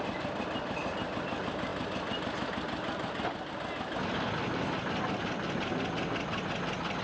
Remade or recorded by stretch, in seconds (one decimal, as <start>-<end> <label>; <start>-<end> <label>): 0.0-7.0 recorded